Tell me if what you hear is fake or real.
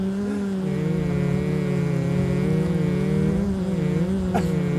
real